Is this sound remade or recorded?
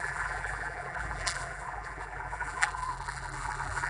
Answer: remade